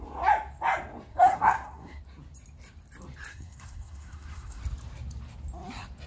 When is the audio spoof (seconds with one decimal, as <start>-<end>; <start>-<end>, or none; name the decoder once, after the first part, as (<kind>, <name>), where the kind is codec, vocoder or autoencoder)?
1.1-2.0 (codec, SNAC); 3.3-4.6